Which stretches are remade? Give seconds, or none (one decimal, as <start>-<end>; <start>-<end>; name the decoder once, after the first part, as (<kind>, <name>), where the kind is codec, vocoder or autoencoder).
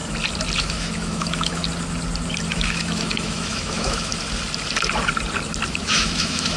0.6-1.6 (autoencoder, DAC-VAE); 2.5-4.1; 5.7-6.6